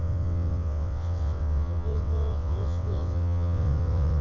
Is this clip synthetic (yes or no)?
yes